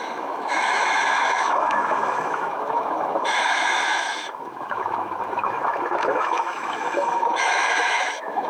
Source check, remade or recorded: remade